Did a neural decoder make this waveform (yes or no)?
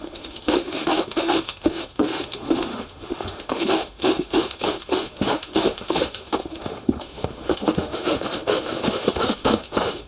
yes